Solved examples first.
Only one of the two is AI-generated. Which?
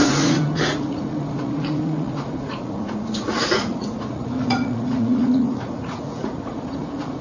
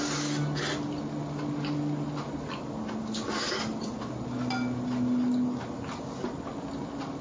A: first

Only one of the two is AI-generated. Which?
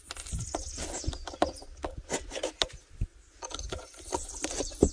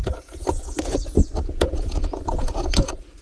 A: second